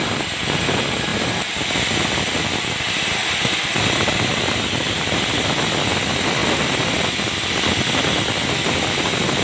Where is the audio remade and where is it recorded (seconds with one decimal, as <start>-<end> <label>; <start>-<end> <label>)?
0.0-1.1 recorded; 1.1-2.8 remade; 2.8-9.4 recorded